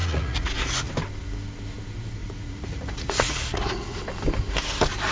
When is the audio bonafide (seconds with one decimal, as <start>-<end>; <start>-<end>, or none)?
0.9-2.2; 4.0-5.1